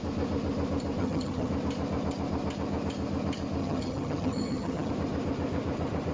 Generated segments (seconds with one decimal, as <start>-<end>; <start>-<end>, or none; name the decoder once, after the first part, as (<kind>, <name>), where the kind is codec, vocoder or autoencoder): 1.0-1.5 (vocoder, HiFi-GAN); 3.6-4.9